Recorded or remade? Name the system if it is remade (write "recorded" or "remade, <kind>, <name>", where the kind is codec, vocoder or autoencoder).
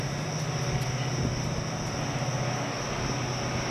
recorded